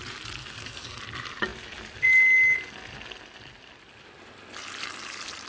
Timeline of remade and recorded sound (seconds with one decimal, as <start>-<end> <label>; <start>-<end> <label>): 0.0-0.4 recorded; 0.4-1.0 remade; 1.0-5.5 recorded